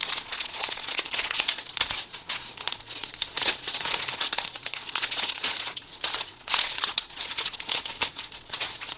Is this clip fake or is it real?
fake